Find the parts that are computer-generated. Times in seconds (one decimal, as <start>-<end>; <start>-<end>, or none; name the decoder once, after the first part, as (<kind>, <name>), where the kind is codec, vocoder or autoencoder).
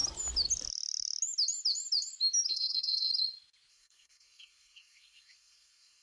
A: 2.5-3.1 (codec, SNAC); 3.7-6.0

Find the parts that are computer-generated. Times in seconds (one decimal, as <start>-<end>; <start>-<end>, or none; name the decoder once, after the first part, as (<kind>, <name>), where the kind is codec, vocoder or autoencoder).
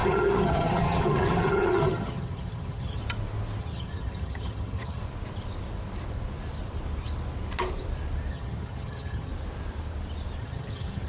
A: 0.0-3.0 (vocoder, HiFi-GAN); 3.6-5.0; 8.3-9.3; 10.4-11.1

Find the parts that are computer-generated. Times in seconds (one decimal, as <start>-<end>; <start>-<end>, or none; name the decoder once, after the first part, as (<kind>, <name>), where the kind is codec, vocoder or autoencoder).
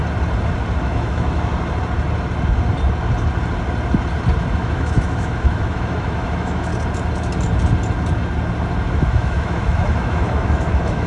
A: 0.8-1.5 (autoencoder, DAC-VAE); 4.6-6.7; 8.9-11.1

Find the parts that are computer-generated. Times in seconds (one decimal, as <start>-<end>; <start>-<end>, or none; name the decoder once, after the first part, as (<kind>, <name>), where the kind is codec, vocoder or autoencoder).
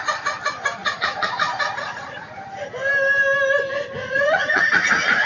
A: 0.8-2.3 (vocoder, Vocos); 4.0-5.3